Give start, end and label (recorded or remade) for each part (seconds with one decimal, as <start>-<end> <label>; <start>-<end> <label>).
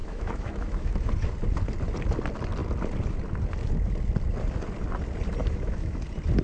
0.0-1.1 remade; 1.1-5.4 recorded; 5.4-6.0 remade; 6.0-6.4 recorded